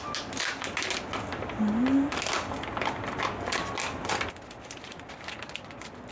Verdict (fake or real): real